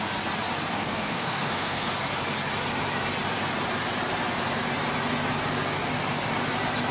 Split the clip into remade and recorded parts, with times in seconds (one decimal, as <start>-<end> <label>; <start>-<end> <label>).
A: 0.0-0.7 recorded; 0.7-1.9 remade; 1.9-6.9 recorded